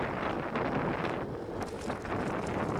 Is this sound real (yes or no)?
yes